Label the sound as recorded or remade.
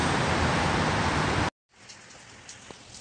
recorded